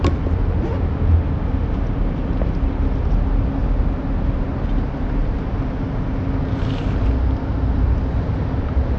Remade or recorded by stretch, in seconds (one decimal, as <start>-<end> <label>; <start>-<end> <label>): 0.0-9.0 recorded